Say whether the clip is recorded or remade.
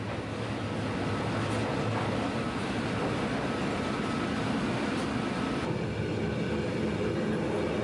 recorded